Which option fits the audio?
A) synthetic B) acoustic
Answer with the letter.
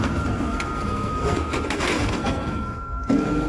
A